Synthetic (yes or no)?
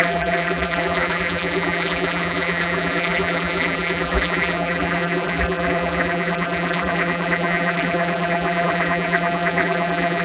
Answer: yes